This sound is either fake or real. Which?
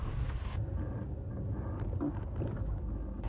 real